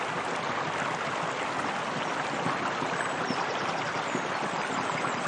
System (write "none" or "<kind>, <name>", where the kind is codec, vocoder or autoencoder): none